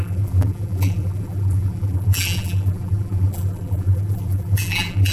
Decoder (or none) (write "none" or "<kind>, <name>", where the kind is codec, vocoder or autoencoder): vocoder, BigVGAN v2